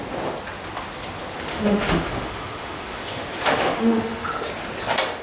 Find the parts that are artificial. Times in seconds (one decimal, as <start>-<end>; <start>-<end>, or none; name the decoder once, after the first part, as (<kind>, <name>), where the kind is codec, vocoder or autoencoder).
1.5-4.5 (autoencoder, DAC-VAE)